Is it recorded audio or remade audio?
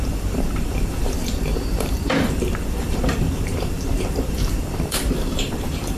remade